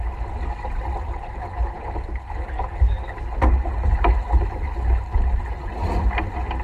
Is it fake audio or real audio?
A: real